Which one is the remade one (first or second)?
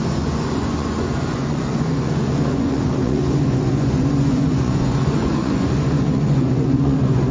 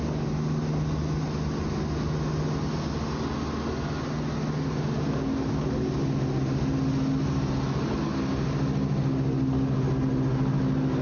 first